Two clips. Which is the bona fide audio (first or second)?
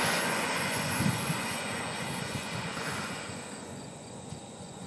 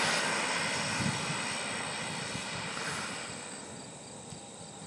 second